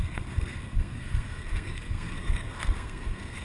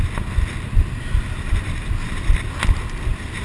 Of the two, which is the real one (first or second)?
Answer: second